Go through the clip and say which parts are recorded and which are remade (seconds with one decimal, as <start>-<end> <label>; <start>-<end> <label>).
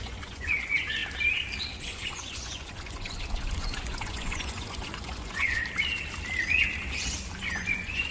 0.0-1.0 remade; 1.0-1.7 recorded; 1.7-5.6 remade; 5.6-7.5 recorded; 7.5-8.1 remade